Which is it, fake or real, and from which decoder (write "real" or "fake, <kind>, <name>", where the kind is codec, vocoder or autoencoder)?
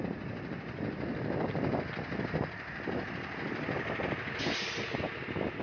real